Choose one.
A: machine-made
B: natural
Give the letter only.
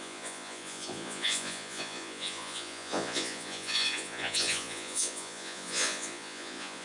A